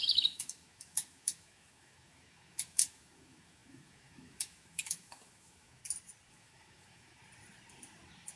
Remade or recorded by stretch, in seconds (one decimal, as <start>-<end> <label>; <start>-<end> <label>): 0.0-5.8 remade; 5.8-6.3 recorded; 6.3-7.2 remade; 7.2-8.4 recorded